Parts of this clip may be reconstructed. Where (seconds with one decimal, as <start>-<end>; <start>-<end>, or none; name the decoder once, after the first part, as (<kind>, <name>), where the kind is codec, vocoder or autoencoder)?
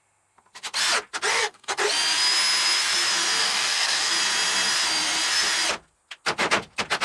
1.3-1.8 (codec, DAC); 3.4-4.1